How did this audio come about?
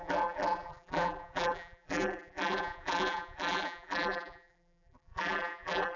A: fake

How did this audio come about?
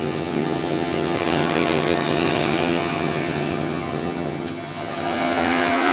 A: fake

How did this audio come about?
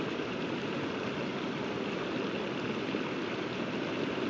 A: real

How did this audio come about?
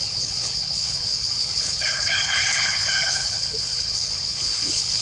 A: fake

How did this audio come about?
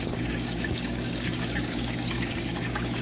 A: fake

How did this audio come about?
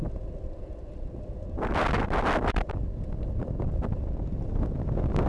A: real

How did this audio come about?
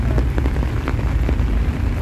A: real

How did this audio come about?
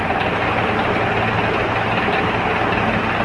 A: real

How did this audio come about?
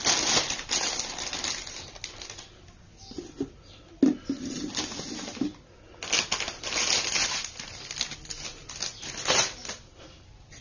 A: real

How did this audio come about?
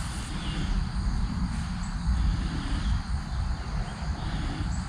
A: real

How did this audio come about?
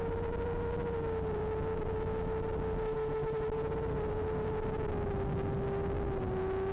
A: real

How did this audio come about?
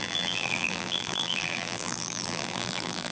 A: fake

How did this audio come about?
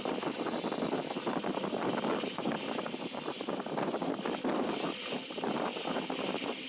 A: real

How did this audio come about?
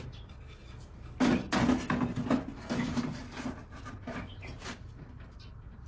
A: real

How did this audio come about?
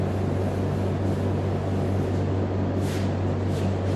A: real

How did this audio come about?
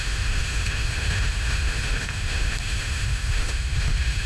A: fake